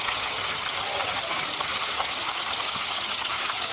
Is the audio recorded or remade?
remade